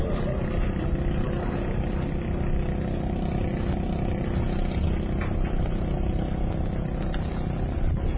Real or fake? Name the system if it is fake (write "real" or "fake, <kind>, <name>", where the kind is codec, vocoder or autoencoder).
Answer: real